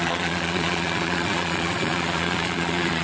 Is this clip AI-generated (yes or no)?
yes